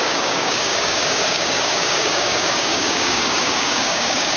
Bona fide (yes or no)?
no